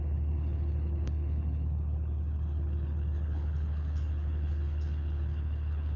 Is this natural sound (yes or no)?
no